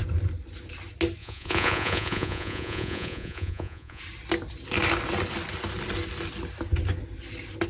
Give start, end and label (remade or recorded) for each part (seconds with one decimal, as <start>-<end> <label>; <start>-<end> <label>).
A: 0.0-1.2 recorded; 1.2-4.0 remade; 4.0-7.7 recorded